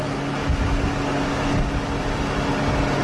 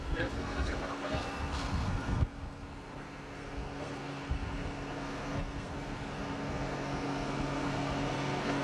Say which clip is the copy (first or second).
second